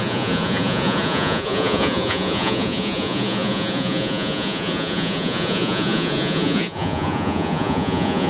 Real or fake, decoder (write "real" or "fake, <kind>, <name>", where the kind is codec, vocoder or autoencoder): fake, vocoder, Vocos